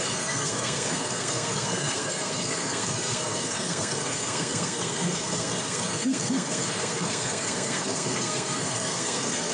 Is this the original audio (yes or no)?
no